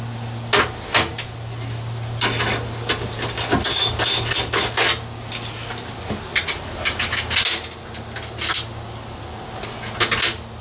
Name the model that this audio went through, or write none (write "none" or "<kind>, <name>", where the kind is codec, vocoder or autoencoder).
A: none